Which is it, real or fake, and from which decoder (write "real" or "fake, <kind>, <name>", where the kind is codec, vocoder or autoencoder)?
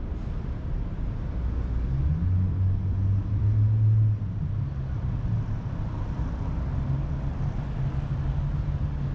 real